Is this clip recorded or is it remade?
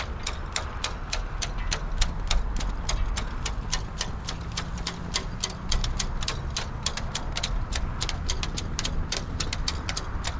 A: recorded